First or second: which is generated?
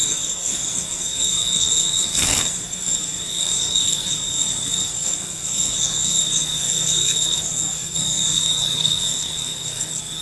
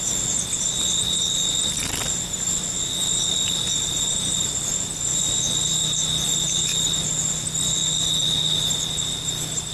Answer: first